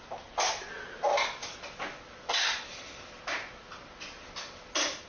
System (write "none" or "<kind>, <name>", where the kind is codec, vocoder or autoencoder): none